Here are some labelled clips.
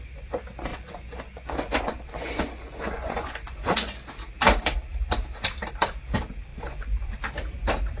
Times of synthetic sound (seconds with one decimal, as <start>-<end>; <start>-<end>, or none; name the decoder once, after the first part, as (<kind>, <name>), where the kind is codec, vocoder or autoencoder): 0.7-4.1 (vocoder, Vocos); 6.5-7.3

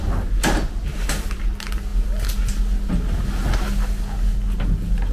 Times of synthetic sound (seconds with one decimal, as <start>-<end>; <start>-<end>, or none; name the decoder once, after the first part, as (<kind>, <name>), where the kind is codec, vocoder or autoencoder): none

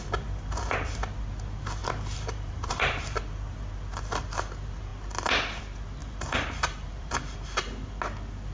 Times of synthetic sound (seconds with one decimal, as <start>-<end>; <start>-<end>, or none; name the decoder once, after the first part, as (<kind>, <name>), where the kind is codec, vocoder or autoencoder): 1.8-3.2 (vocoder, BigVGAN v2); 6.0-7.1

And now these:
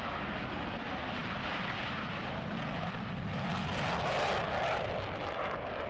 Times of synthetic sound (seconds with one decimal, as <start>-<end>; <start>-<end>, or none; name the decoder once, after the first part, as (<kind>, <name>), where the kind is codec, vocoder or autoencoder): none

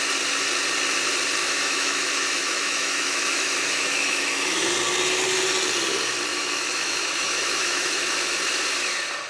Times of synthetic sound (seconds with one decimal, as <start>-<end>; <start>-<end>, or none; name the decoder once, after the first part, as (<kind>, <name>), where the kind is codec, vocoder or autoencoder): 1.4-4.6 (autoencoder, DAC-VAE); 6.3-8.0